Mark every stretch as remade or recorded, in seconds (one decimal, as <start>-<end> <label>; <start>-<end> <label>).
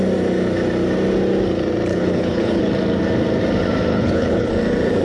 0.0-1.9 recorded; 1.9-2.6 remade; 2.6-3.9 recorded; 3.9-4.5 remade; 4.5-5.0 recorded